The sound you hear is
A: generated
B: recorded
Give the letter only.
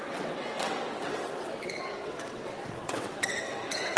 A